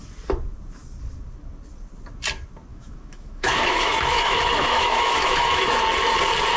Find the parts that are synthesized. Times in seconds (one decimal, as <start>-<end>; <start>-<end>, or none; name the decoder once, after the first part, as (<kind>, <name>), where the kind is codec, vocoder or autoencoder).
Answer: 2.7-5.8 (autoencoder, DAC-VAE)